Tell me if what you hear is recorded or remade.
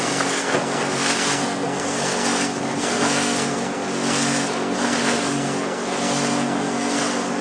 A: remade